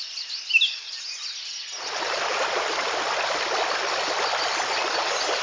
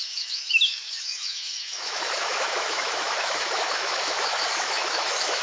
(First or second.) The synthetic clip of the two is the second